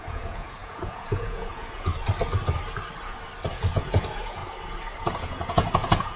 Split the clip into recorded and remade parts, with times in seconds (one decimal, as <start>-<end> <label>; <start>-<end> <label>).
0.0-1.9 remade; 1.9-3.5 recorded; 3.5-4.4 remade; 4.4-5.0 recorded; 5.0-6.2 remade